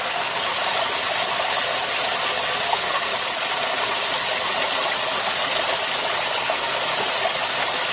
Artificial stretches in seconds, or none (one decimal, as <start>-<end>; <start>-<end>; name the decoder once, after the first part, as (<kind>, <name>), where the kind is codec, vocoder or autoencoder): 0.0-0.5 (codec, SNAC); 2.7-3.1; 6.4-6.9